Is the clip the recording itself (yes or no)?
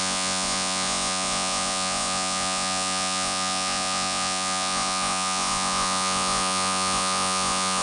no